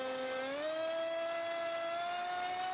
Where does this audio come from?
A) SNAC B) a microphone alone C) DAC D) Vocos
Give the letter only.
B